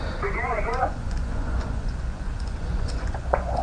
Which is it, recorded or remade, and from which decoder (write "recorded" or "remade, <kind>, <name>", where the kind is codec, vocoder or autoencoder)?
remade, vocoder, Vocos